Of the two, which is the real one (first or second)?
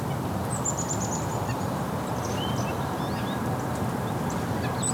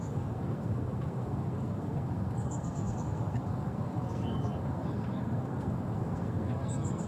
first